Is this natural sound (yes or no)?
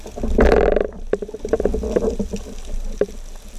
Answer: yes